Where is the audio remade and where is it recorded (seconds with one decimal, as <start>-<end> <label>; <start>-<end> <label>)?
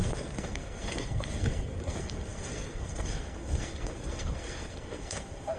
0.0-5.6 remade